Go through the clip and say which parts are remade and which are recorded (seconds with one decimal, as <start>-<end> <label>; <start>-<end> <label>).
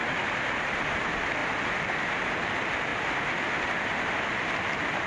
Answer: 0.0-1.0 remade; 1.0-2.9 recorded; 2.9-5.1 remade